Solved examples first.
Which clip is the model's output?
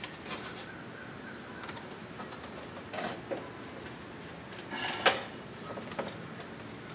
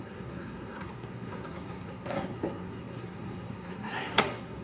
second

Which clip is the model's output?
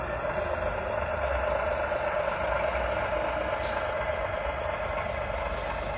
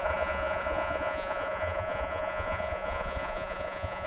second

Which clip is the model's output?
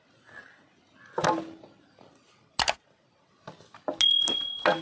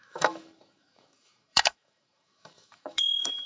second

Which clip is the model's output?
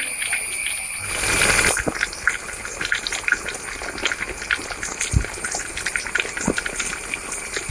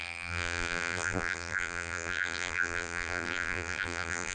second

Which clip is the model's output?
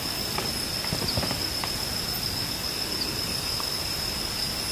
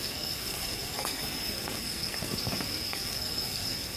second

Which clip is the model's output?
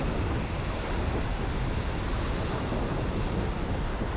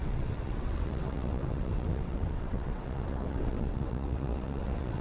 second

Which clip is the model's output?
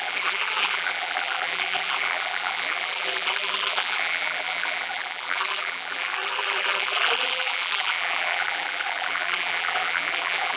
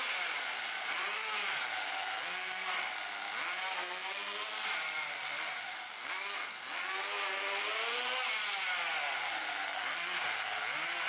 first